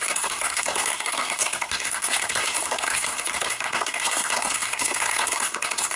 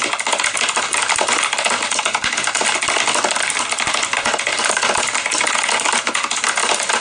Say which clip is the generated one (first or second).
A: first